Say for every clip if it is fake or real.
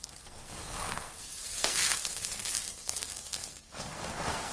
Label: fake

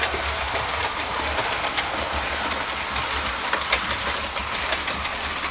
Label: real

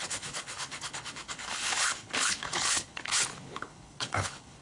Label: fake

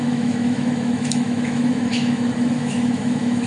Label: fake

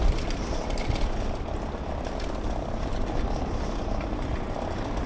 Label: real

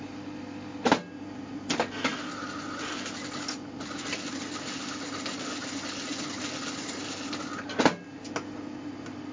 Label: real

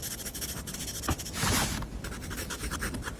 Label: real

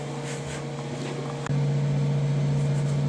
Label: real